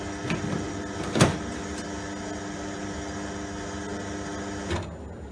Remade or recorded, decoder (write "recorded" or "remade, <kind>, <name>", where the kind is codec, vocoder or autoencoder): recorded